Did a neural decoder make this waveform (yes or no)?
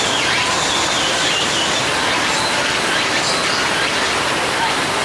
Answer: no